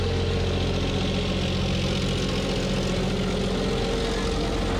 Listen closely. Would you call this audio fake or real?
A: real